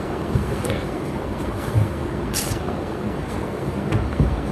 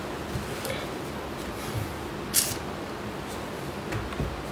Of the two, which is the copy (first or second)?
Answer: first